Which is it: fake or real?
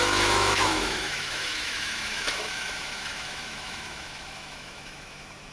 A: fake